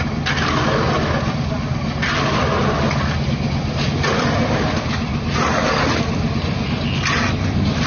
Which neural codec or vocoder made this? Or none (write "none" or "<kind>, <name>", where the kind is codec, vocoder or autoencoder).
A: none